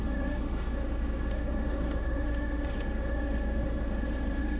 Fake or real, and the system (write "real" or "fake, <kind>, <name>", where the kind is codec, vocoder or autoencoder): fake, autoencoder, DAC-VAE